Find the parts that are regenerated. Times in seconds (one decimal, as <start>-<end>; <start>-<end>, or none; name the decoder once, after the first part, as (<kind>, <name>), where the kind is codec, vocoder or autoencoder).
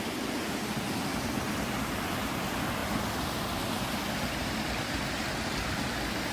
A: none